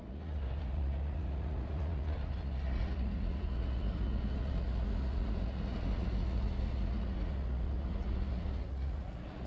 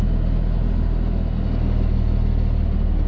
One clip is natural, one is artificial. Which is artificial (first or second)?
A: first